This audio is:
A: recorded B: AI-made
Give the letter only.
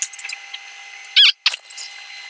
A